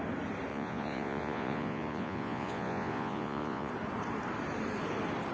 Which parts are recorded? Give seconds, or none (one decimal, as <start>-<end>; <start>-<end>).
0.0-0.5; 3.7-5.3